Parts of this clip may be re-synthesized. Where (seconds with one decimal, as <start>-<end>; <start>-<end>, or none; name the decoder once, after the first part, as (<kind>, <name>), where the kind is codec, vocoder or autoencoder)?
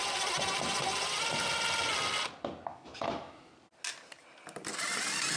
2.7-3.5 (autoencoder, DAC-VAE)